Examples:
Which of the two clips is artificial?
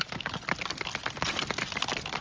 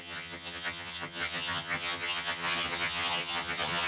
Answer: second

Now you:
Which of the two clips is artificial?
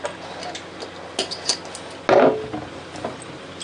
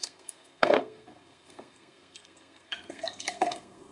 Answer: second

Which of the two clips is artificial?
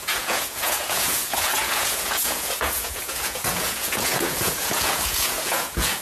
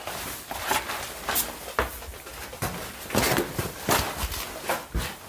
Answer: first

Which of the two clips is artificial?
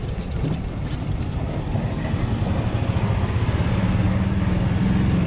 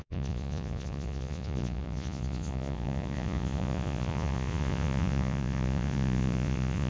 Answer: second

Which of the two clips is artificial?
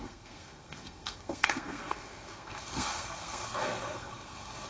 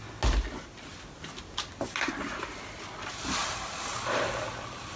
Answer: first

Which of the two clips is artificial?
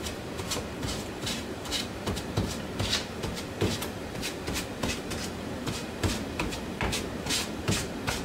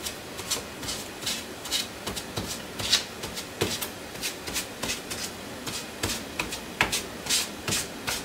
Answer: first